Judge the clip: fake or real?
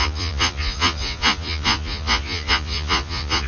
fake